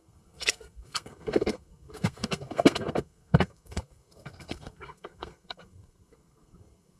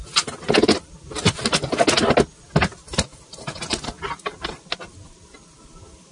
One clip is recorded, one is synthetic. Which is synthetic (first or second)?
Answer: first